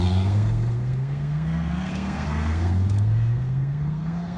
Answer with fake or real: fake